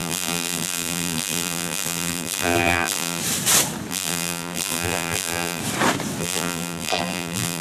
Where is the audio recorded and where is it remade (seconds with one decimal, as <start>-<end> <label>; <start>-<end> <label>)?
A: 0.0-3.2 remade; 3.2-3.9 recorded; 3.9-5.6 remade; 5.6-6.2 recorded; 6.2-7.6 remade